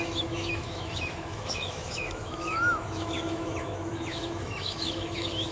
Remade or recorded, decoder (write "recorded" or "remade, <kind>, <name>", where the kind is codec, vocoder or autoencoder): remade, autoencoder, DAC-VAE